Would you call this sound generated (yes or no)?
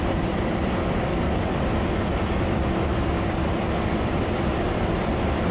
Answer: yes